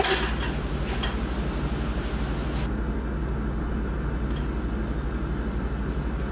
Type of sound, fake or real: real